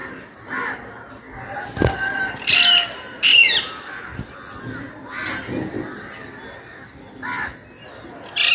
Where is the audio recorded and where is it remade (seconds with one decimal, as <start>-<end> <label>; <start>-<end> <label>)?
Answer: 0.0-1.1 remade; 1.1-8.5 recorded